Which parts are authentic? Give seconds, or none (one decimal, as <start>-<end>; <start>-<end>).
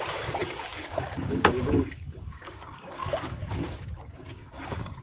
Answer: none